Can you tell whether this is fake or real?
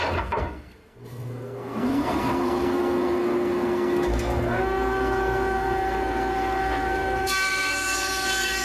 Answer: fake